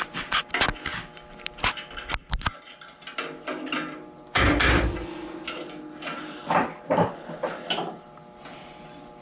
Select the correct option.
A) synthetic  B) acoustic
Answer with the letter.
B